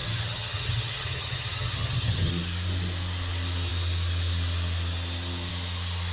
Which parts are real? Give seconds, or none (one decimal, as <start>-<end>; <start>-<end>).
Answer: 2.3-6.1